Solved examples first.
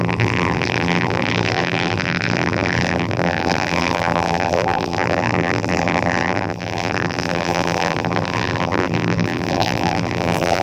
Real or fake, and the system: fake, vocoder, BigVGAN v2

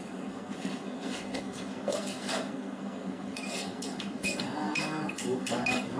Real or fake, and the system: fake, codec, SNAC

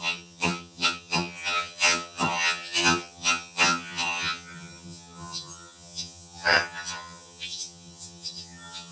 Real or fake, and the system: fake, vocoder, HiFi-GAN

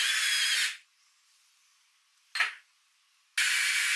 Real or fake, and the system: real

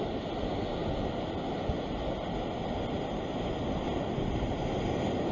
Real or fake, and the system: real